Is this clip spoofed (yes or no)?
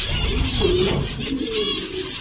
no